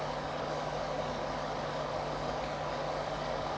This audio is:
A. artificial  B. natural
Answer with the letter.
A